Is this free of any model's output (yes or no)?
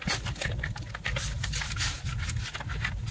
yes